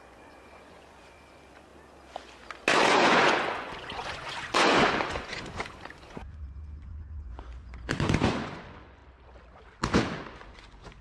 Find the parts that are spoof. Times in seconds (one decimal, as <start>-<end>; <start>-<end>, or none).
0.0-1.7; 2.7-9.0; 10.2-11.0